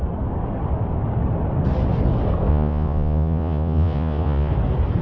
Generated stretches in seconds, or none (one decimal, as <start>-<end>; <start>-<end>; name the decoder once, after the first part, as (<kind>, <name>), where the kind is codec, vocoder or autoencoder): 2.5-4.5 (vocoder, Vocos)